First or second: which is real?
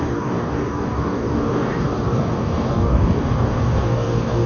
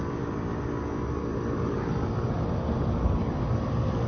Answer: second